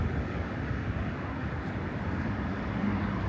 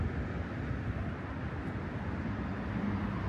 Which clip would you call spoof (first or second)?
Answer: first